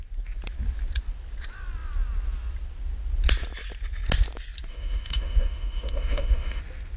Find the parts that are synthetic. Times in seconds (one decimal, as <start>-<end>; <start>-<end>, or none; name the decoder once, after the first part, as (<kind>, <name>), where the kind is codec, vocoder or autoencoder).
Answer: 4.7-6.6 (autoencoder, DAC-VAE)